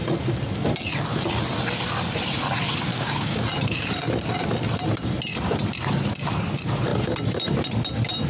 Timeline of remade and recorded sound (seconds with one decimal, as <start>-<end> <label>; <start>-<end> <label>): 0.0-2.9 recorded; 2.9-3.4 remade; 3.4-8.3 recorded